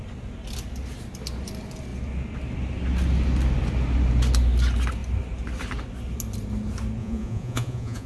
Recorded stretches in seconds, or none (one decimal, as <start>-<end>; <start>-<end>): 0.0-7.0